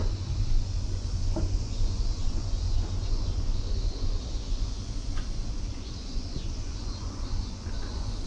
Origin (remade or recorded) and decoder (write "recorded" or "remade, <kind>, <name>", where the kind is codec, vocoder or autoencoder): remade, vocoder, Vocos